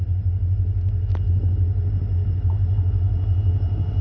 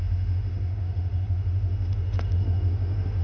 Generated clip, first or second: second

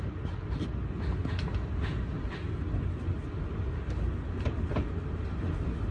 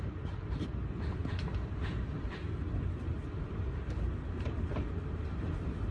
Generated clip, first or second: second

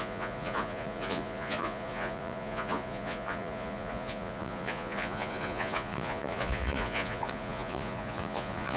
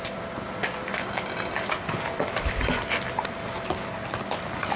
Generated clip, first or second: first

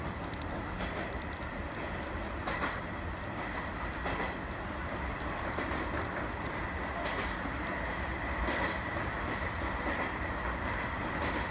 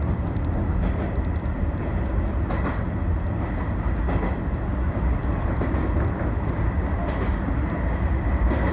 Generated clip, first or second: first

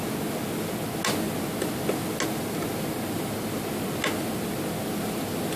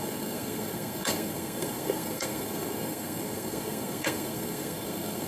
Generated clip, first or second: second